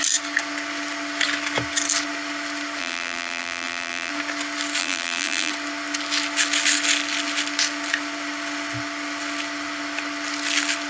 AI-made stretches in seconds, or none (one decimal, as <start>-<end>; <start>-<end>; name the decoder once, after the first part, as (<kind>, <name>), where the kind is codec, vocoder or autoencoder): 2.8-4.1 (vocoder, BigVGAN v2); 4.8-5.5